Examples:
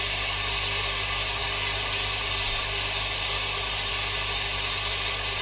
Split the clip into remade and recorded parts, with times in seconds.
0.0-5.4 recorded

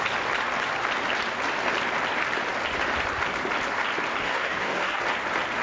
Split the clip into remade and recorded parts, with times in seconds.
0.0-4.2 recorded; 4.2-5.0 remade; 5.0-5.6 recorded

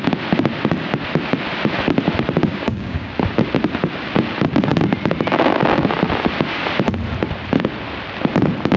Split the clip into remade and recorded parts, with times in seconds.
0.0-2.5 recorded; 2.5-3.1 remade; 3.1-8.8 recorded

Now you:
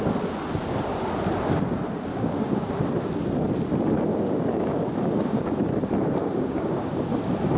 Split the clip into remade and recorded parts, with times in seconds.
0.0-2.1 recorded; 2.1-2.7 remade; 2.7-4.1 recorded; 4.1-5.7 remade; 5.7-6.2 recorded; 6.2-7.1 remade; 7.1-7.6 recorded

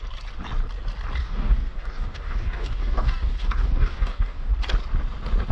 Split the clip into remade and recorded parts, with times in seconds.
0.0-1.2 recorded; 1.2-4.5 remade; 4.5-5.5 recorded

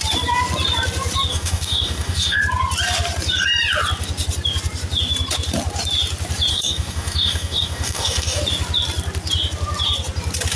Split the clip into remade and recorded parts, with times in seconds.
0.0-1.3 recorded; 1.3-2.4 remade; 2.4-6.5 recorded; 6.5-8.4 remade; 8.4-10.6 recorded